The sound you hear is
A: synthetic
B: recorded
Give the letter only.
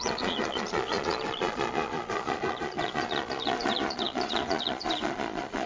A